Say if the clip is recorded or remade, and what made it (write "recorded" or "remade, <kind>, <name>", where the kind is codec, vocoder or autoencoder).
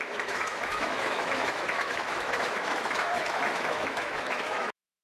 remade, autoencoder, DAC-VAE